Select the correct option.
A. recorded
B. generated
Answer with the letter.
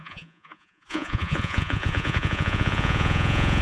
B